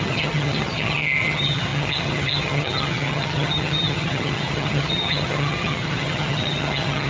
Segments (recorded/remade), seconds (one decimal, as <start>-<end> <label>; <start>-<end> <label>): 0.0-7.1 remade